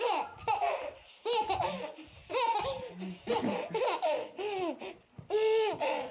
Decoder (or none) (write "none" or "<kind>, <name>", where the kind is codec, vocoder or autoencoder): none